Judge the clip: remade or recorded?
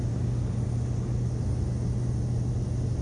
recorded